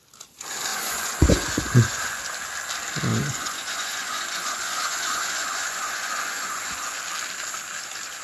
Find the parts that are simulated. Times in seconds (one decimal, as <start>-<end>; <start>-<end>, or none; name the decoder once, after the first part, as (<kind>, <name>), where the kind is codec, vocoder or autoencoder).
0.7-2.2 (vocoder, Vocos); 3.1-7.0